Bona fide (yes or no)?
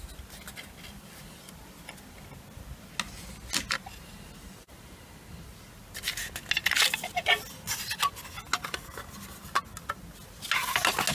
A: yes